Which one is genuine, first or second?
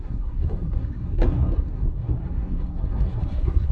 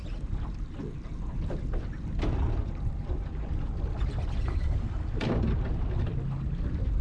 second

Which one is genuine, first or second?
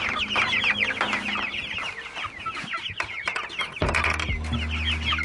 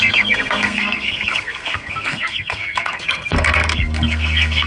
first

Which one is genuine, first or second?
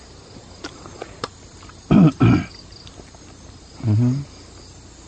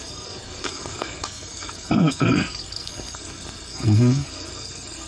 first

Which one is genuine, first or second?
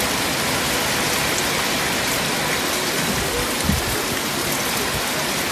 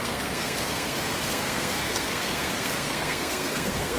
first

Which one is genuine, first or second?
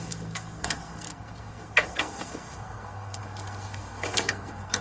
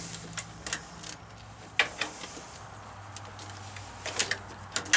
second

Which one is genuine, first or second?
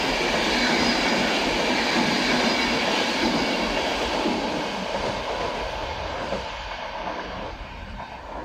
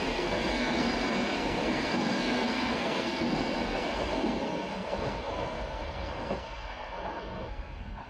first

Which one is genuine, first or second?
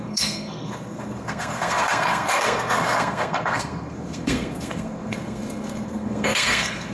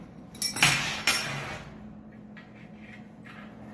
second